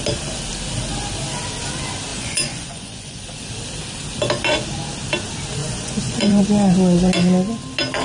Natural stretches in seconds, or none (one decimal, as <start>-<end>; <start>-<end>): 0.0-2.1; 3.2-5.6; 6.4-8.0